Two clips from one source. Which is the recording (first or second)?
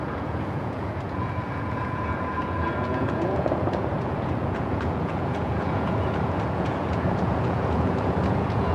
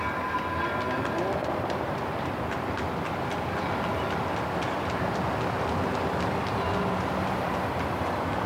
second